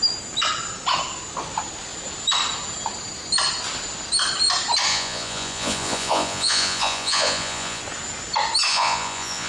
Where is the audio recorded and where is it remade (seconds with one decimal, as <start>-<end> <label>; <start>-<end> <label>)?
0.0-4.9 recorded; 4.9-7.8 remade; 7.8-8.7 recorded; 8.7-9.5 remade